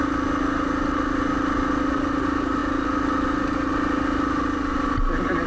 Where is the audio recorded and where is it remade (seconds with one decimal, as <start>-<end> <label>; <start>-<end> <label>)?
0.0-5.5 recorded